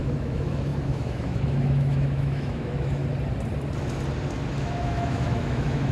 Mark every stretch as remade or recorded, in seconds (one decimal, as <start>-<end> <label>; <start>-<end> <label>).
0.0-3.0 remade; 3.0-4.6 recorded; 4.6-5.9 remade